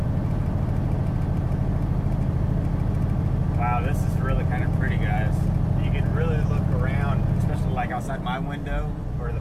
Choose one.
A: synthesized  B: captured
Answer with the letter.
B